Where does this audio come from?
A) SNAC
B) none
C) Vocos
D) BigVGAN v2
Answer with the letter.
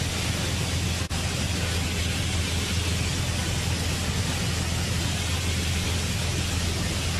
B